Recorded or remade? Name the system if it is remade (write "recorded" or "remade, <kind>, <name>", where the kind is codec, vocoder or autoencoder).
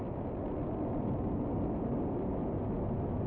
recorded